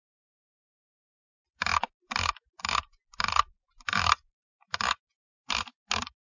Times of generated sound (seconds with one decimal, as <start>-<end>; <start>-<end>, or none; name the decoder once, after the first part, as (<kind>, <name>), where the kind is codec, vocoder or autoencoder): none